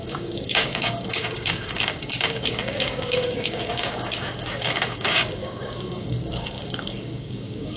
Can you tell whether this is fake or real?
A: fake